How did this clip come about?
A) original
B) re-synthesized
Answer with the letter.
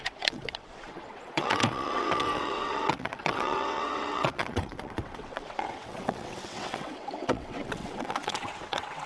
B